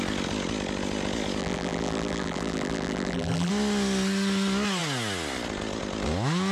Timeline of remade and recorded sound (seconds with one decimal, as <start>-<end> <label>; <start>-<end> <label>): 0.0-1.4 recorded; 1.4-3.5 remade; 3.5-6.5 recorded